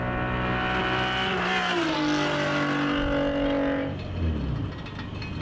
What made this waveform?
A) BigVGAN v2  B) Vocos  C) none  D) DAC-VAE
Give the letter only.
C